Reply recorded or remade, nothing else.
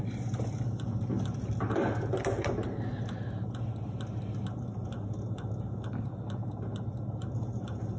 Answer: recorded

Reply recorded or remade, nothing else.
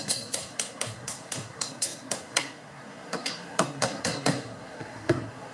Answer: remade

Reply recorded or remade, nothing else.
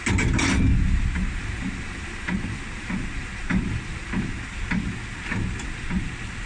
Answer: recorded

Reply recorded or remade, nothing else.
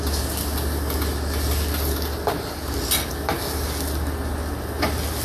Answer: recorded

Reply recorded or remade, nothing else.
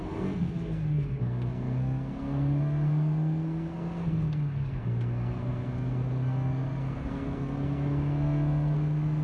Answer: remade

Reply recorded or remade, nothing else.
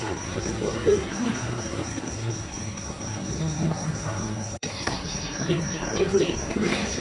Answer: remade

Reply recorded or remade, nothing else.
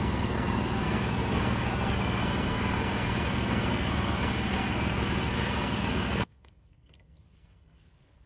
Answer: remade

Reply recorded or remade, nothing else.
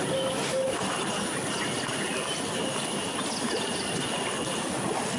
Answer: recorded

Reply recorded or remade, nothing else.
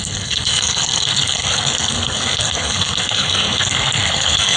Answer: remade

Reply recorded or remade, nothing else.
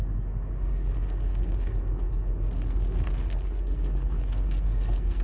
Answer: remade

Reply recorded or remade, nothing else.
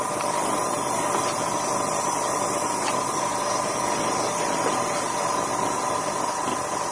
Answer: recorded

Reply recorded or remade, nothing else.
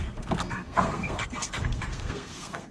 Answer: remade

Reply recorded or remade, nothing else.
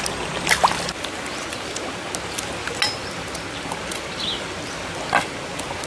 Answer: recorded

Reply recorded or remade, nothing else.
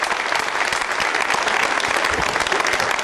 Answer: recorded